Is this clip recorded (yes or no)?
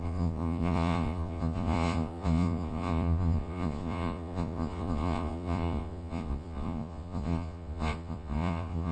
no